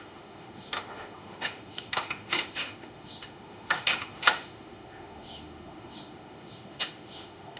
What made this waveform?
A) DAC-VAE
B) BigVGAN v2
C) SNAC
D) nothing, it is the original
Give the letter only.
A